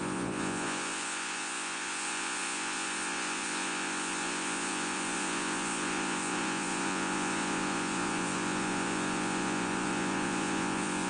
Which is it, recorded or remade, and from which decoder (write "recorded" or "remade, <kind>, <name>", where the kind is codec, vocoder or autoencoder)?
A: remade, vocoder, Vocos